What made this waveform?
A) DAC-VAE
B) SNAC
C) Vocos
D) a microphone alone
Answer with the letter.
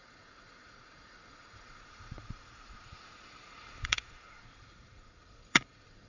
C